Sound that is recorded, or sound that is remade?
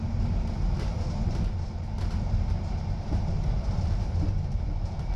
remade